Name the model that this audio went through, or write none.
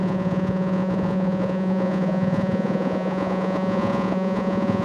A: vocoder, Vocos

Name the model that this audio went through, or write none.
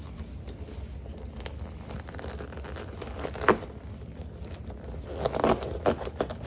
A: none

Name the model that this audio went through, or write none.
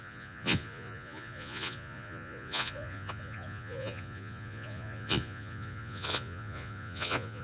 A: vocoder, Vocos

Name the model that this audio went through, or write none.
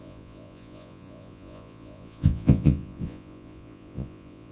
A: vocoder, Vocos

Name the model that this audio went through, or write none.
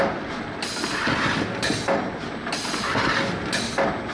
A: none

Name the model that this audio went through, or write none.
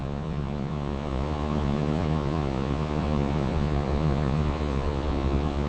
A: vocoder, Vocos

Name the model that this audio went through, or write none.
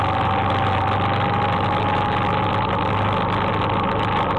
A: none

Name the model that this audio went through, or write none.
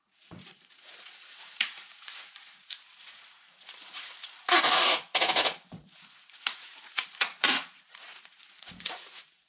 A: vocoder, Vocos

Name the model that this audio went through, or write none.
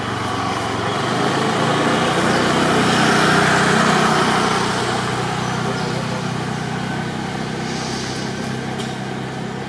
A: none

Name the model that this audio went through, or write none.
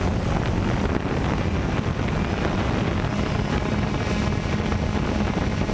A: none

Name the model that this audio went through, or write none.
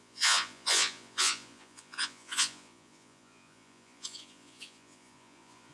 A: vocoder, Vocos